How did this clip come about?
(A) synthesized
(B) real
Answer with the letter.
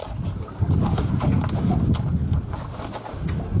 B